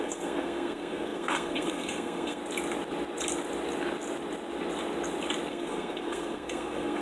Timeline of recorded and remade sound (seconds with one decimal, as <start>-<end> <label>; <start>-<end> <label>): 0.0-2.4 remade; 2.4-5.5 recorded; 5.5-7.0 remade